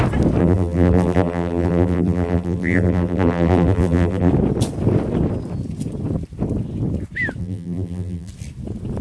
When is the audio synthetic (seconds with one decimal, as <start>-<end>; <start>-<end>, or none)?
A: 0.4-4.3; 7.4-8.3